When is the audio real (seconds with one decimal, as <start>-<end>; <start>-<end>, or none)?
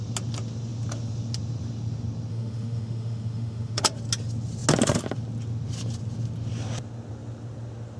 0.0-2.3; 3.8-8.0